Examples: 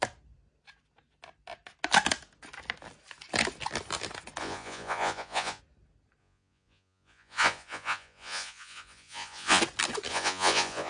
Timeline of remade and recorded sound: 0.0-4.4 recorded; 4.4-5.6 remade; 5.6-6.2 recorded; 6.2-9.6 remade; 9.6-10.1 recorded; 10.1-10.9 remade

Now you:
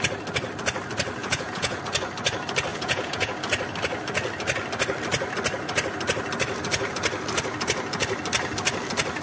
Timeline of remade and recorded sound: 0.0-1.2 recorded; 1.2-1.8 remade; 1.8-2.7 recorded; 2.7-3.3 remade; 3.3-9.2 recorded